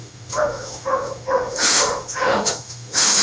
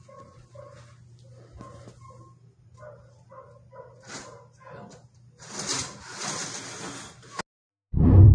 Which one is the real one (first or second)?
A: second